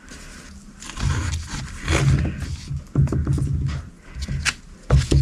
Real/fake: real